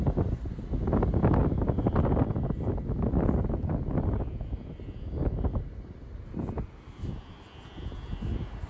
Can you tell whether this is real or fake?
real